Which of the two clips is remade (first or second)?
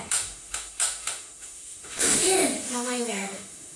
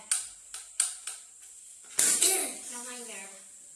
first